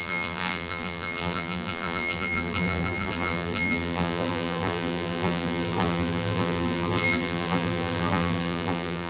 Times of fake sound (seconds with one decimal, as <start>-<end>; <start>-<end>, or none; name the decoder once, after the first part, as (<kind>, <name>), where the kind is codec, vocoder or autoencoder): 0.0-9.1 (vocoder, BigVGAN v2)